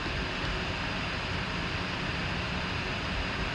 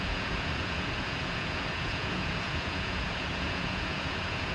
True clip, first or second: first